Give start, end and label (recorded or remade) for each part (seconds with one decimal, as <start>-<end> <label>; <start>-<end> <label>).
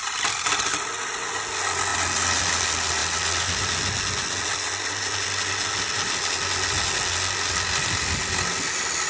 0.0-9.1 recorded